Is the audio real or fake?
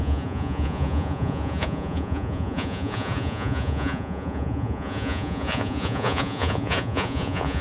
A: fake